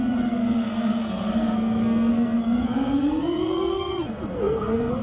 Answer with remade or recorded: remade